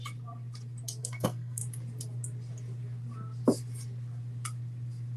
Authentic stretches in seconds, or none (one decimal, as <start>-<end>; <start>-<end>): 0.0-1.0; 1.6-5.2